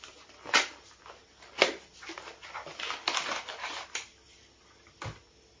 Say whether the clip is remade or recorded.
recorded